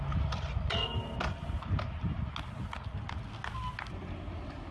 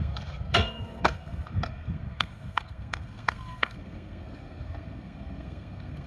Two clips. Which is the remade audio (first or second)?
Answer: second